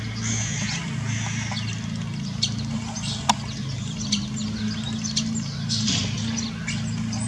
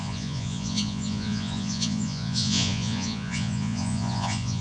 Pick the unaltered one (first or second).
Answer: first